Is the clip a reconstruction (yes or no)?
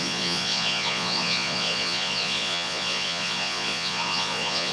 yes